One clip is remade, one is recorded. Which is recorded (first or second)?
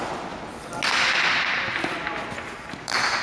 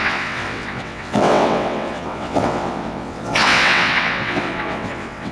first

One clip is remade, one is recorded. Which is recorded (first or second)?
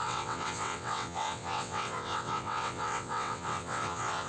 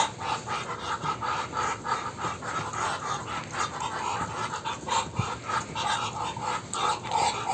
second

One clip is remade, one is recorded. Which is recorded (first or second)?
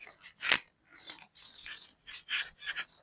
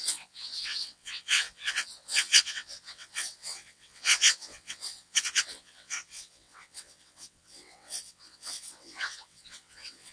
first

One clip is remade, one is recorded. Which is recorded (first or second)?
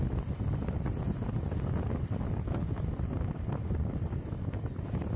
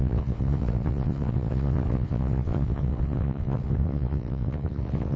first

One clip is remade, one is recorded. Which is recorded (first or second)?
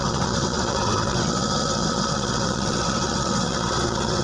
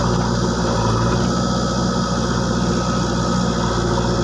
second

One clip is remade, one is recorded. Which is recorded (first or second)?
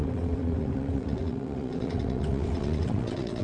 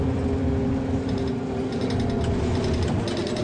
second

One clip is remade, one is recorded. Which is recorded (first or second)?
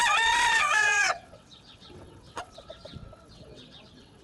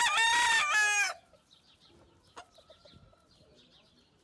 second